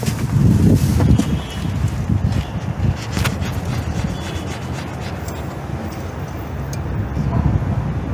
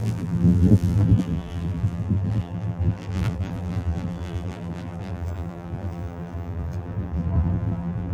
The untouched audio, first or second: first